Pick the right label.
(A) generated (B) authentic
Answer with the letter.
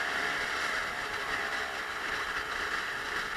A